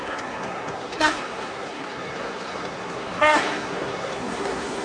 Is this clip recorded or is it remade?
remade